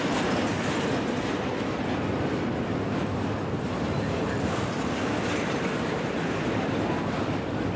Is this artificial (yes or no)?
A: no